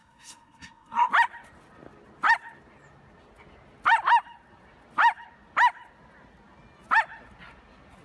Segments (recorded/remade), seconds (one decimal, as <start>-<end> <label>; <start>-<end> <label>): 0.0-1.1 remade; 1.1-8.0 recorded